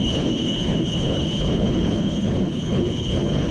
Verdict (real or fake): fake